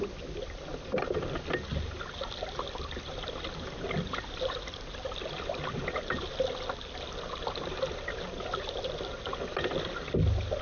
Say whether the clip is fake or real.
real